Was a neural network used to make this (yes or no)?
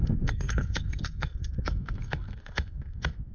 yes